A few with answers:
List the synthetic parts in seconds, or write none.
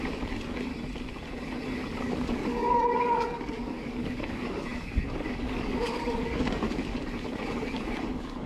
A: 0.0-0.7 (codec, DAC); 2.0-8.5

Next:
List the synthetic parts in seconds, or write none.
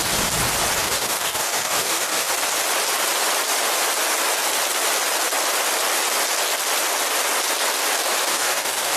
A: 0.8-2.3 (codec, DAC); 8.3-9.0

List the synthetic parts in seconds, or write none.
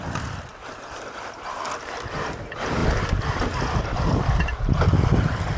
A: none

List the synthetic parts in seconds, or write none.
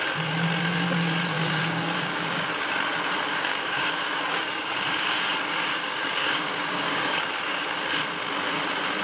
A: 1.3-2.4 (codec, DAC); 3.3-7.6